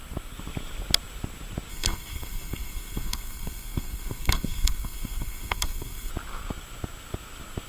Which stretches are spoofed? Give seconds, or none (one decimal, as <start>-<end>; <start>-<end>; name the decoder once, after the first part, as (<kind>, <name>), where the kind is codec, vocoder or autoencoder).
1.7-6.1 (codec, SNAC)